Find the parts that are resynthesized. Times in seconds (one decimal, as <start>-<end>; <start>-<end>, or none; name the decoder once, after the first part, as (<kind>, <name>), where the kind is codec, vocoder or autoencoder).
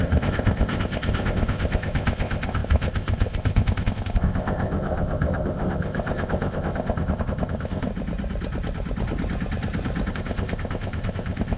0.0-7.9 (codec, ZipCodec); 10.1-11.6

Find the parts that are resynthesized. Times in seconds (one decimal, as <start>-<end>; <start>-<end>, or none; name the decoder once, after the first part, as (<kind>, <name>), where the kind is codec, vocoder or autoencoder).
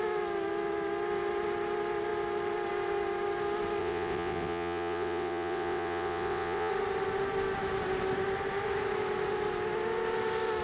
3.8-6.7 (vocoder, WaveNeXt)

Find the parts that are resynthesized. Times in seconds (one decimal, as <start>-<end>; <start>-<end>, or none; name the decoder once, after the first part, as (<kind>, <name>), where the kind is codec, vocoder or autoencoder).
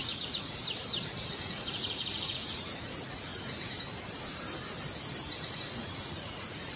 0.0-0.6 (vocoder, Vocos); 1.3-3.3; 5.6-6.8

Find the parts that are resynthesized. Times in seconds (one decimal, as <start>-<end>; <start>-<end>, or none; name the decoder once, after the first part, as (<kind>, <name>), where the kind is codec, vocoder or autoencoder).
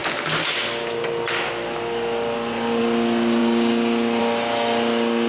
none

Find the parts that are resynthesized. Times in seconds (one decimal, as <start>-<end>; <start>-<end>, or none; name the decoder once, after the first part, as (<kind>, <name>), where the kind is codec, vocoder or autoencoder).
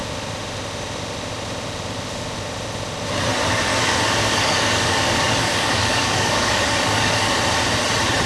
3.7-7.4 (codec, DAC)